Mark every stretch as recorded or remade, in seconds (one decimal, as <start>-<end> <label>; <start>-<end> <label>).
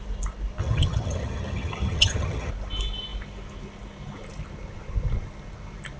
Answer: 0.0-0.6 recorded; 0.6-2.5 remade; 2.5-6.0 recorded